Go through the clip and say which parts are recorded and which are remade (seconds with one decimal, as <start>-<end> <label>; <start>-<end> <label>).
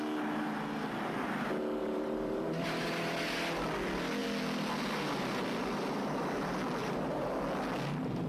0.0-1.8 recorded; 1.8-2.9 remade; 2.9-6.8 recorded; 6.8-7.3 remade; 7.3-8.3 recorded